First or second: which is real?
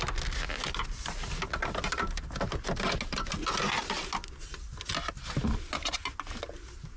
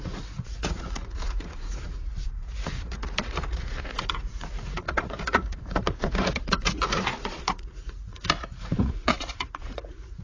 first